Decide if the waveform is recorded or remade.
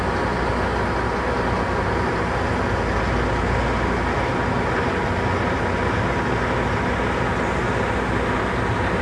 recorded